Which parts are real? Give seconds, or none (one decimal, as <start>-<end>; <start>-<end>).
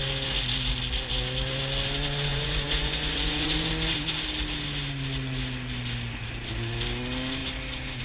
0.0-2.3; 3.7-8.0